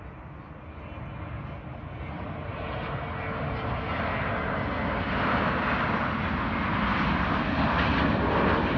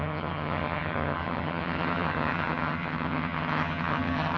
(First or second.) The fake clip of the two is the second